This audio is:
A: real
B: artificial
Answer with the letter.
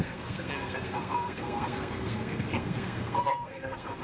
B